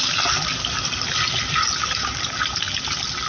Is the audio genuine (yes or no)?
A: yes